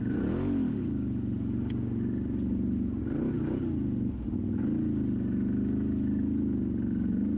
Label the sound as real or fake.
real